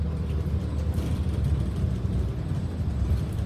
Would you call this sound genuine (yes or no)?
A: yes